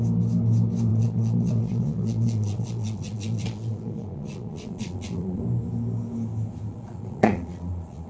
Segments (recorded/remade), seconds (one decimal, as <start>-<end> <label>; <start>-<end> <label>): 0.0-0.9 recorded; 0.9-5.4 remade; 5.4-6.7 recorded; 6.7-8.1 remade